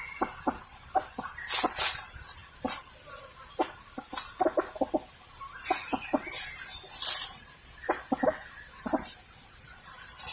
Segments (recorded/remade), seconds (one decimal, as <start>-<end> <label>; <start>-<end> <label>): 0.0-10.3 recorded